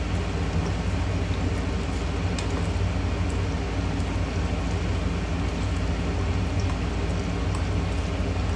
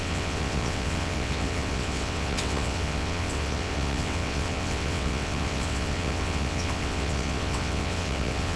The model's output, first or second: second